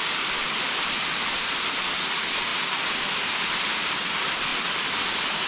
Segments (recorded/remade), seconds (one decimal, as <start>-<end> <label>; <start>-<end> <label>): 0.0-5.5 recorded